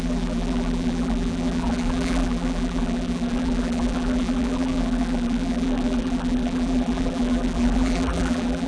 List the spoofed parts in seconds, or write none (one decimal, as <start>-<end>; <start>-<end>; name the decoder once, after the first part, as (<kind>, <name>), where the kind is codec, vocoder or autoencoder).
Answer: 0.0-8.7 (vocoder, BigVGAN v2)